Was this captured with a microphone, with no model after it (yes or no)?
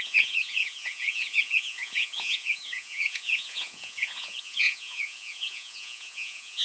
no